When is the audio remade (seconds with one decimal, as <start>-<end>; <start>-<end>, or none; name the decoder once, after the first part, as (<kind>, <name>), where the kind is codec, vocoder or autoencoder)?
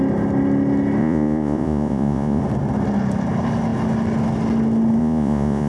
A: 1.0-2.4 (vocoder, Vocos); 5.0-5.7